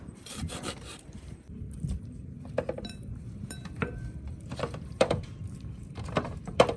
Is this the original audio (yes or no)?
no